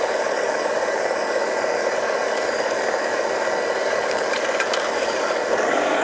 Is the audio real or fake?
fake